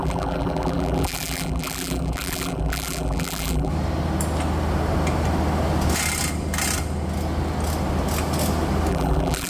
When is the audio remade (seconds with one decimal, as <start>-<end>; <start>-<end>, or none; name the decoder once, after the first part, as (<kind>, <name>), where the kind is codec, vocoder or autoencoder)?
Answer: 0.0-3.7 (vocoder, BigVGAN v2); 8.9-9.5